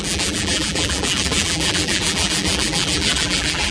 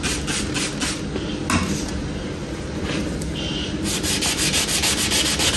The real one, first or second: second